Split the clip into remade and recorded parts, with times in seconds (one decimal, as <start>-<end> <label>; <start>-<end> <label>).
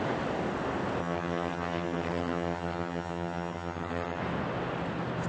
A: 0.0-1.0 recorded; 1.0-4.2 remade; 4.2-5.3 recorded